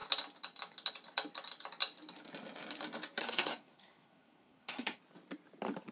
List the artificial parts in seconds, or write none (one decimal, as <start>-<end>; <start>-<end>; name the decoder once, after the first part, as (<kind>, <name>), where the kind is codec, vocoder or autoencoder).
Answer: 3.2-5.0 (codec, SNAC)